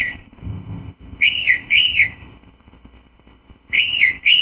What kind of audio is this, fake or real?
fake